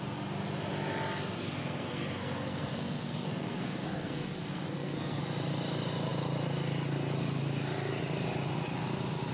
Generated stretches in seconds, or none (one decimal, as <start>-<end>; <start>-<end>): 1.6-5.2